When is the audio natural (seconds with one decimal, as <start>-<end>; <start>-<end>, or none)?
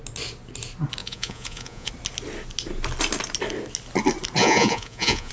0.0-1.0; 1.9-4.4